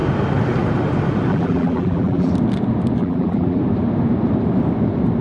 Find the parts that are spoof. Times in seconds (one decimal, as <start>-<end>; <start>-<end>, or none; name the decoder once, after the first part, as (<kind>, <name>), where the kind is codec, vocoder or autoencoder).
1.3-2.3 (vocoder, BigVGAN v2); 3.0-3.6